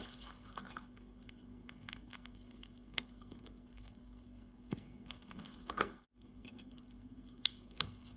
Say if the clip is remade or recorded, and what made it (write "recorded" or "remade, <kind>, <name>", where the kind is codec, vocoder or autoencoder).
remade, codec, SNAC